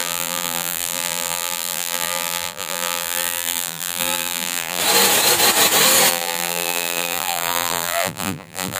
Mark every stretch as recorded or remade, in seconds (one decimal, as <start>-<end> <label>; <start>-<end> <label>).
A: 0.0-4.8 remade; 4.8-6.1 recorded; 6.1-8.8 remade